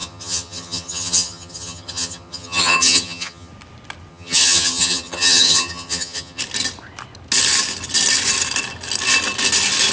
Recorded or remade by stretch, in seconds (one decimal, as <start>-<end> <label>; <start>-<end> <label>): 0.0-3.5 remade; 3.5-4.1 recorded; 4.1-6.4 remade; 6.4-9.9 recorded